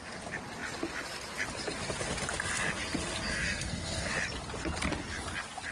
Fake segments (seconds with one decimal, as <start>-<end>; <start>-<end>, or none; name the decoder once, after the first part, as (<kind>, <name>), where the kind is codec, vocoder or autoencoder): 3.3-4.1 (codec, SNAC)